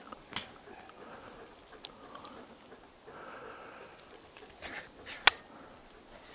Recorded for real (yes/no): yes